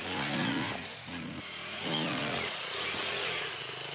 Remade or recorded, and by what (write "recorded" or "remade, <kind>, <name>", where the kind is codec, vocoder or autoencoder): remade, vocoder, Vocos